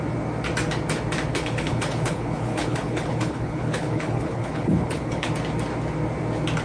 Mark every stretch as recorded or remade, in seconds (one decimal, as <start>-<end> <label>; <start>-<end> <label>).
0.0-1.3 recorded; 1.3-5.3 remade; 5.3-6.6 recorded